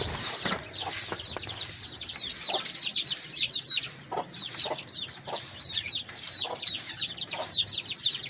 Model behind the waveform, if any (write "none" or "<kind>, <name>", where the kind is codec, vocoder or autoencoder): vocoder, BigVGAN v2